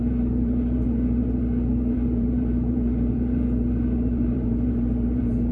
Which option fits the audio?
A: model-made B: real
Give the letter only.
A